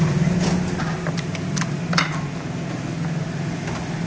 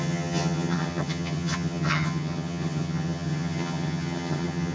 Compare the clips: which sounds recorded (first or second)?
first